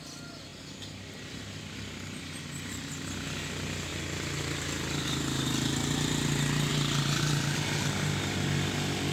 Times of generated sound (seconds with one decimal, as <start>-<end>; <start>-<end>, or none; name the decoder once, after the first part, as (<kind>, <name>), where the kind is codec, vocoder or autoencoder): none